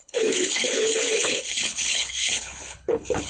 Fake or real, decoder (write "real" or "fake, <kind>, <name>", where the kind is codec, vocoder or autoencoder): fake, codec, HILCodec